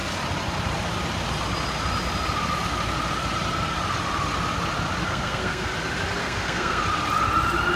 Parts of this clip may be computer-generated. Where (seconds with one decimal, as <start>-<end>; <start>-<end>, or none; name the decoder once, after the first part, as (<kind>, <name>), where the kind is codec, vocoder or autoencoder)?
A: 5.0-5.7 (codec, SNAC); 6.2-6.8